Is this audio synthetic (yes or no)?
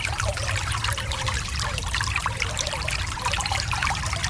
yes